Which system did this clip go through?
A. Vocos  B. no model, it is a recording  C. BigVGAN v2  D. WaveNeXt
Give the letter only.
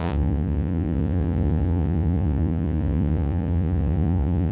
A